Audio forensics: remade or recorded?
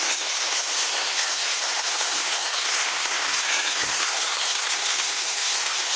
remade